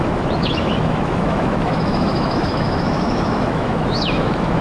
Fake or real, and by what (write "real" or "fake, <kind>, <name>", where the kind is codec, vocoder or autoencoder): fake, autoencoder, DAC-VAE